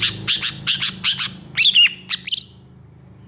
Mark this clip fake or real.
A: real